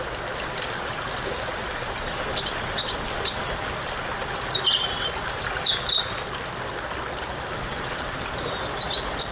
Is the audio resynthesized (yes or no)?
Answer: no